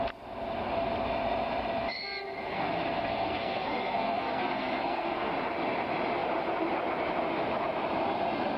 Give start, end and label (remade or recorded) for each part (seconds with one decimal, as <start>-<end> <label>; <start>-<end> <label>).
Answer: 0.0-2.5 recorded; 2.5-5.3 remade; 5.3-8.6 recorded